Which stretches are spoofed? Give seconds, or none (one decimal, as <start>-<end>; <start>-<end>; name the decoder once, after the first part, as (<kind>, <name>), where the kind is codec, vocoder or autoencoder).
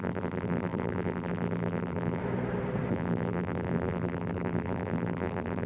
0.0-2.2 (vocoder, BigVGAN v2); 2.9-5.7